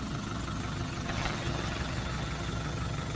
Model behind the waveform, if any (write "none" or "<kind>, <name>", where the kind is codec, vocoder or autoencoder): vocoder, HiFi-GAN